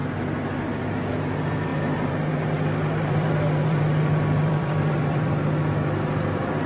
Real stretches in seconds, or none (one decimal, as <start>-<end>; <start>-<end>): 0.7-1.7; 5.3-6.7